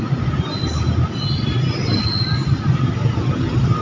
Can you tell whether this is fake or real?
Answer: real